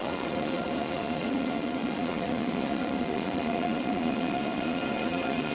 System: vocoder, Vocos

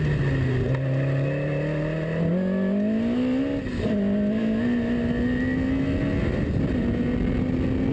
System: none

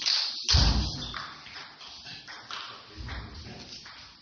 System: none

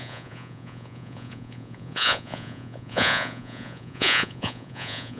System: vocoder, Vocos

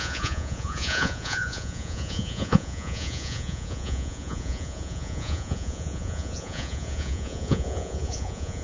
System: vocoder, Vocos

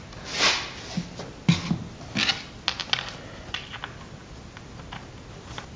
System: none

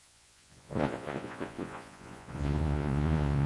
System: vocoder, Vocos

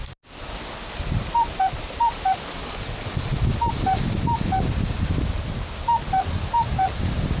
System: none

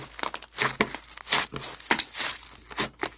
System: none